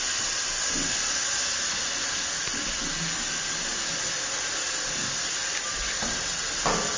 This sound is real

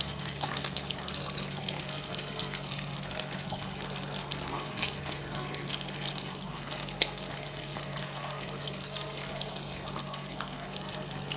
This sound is fake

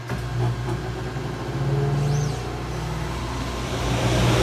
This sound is real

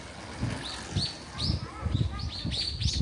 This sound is real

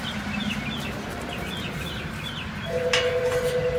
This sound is real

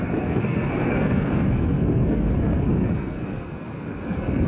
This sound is fake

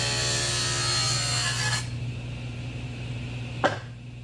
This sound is real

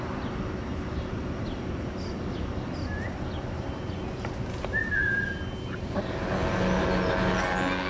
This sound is real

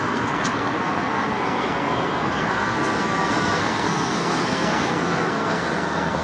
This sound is fake